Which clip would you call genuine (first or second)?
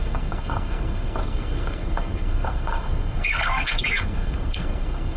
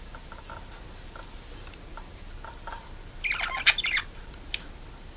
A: second